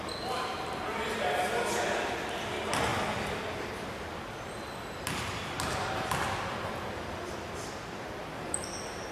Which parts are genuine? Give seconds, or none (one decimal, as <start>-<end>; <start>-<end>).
0.0-9.1